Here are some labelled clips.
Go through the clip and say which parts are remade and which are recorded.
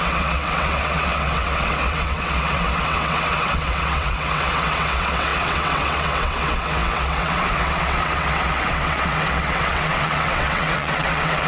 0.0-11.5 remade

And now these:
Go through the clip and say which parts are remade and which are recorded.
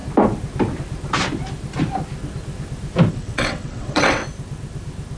0.0-3.1 recorded; 3.1-4.2 remade; 4.2-5.2 recorded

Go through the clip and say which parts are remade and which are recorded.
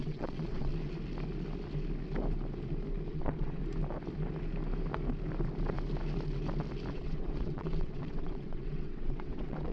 0.0-0.7 remade; 0.7-3.1 recorded; 3.1-3.6 remade; 3.6-6.9 recorded; 6.9-9.7 remade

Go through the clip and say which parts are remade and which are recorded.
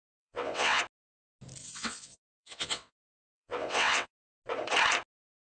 0.0-0.8 remade; 0.8-1.6 recorded; 1.6-4.1 remade; 4.1-5.5 recorded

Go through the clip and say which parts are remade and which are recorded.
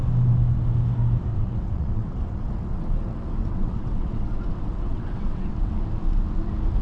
0.0-1.3 recorded; 1.3-2.5 remade; 2.5-3.4 recorded; 3.4-5.7 remade; 5.7-6.8 recorded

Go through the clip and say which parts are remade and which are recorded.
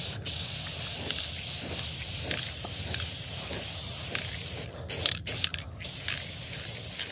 0.0-7.1 recorded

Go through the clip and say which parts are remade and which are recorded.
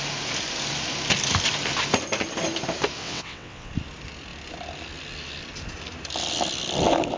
0.0-3.0 recorded; 3.0-3.7 remade; 3.7-7.2 recorded